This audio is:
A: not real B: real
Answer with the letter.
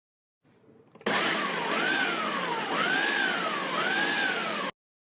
B